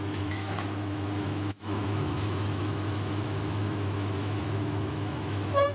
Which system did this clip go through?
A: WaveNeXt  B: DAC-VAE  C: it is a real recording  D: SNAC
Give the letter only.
B